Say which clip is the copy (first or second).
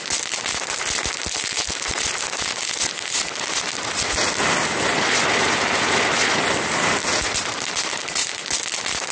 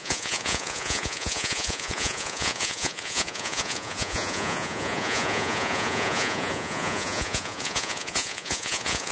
second